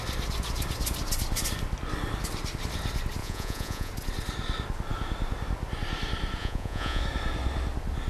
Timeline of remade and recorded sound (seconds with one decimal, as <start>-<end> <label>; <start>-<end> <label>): 0.0-3.2 recorded; 3.2-3.9 remade; 3.9-6.4 recorded; 6.4-7.0 remade; 7.0-8.1 recorded